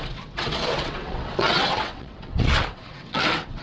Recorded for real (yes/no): no